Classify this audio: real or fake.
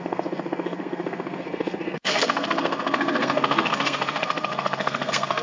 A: fake